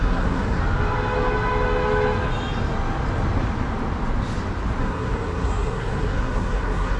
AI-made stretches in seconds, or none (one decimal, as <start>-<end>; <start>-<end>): 0.0-0.6; 4.8-7.0